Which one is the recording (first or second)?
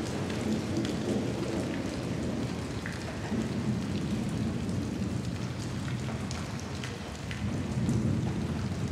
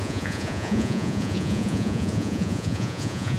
first